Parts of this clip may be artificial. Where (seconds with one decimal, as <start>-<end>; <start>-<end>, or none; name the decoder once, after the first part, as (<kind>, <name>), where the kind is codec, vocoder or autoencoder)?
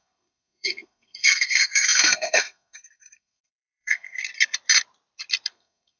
0.0-4.2 (codec, SNAC); 5.5-6.0